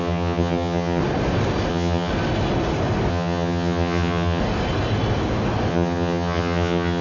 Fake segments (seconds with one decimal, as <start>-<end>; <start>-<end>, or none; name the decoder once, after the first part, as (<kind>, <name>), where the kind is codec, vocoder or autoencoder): 0.0-1.0 (vocoder, HiFi-GAN); 1.7-2.1; 3.1-4.4; 5.7-7.0